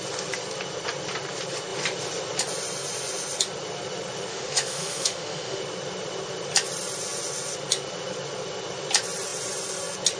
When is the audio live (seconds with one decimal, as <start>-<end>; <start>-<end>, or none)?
0.0-4.3; 5.6-10.2